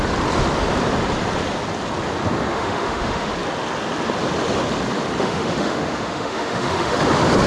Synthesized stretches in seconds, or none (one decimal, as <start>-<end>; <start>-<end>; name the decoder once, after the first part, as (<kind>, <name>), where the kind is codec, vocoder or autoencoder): 2.5-3.3 (autoencoder, DAC-VAE); 5.2-7.0